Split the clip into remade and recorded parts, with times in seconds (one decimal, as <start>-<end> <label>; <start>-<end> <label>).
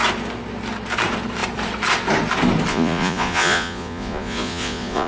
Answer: 0.0-2.7 recorded; 2.7-5.1 remade